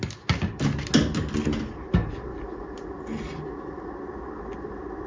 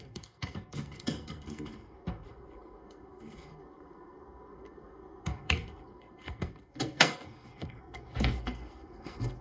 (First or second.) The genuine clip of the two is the first